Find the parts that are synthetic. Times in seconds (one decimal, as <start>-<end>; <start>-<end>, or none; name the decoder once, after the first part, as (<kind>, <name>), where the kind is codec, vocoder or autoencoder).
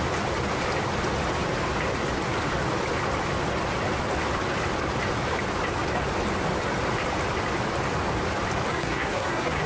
8.7-9.7 (codec, SNAC)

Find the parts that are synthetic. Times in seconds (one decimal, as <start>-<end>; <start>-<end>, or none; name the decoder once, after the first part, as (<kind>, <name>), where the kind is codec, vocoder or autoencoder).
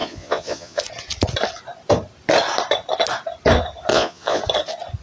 0.0-0.8 (vocoder, Vocos); 3.9-4.4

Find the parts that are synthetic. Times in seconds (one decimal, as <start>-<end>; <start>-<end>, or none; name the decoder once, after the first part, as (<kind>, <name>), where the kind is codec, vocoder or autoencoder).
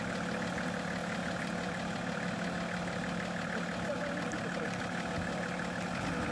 none